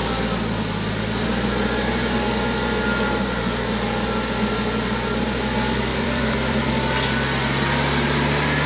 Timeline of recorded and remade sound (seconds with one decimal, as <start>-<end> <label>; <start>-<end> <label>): 0.0-5.9 recorded; 5.9-6.7 remade; 6.7-8.7 recorded